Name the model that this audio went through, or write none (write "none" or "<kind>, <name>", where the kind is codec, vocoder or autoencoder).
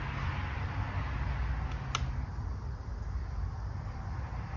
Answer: none